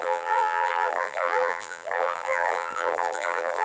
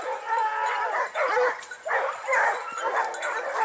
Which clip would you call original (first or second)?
second